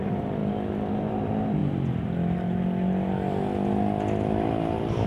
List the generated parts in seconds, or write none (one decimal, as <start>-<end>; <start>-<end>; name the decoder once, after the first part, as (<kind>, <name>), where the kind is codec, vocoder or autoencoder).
0.0-0.4 (vocoder, BigVGAN v2); 0.9-1.6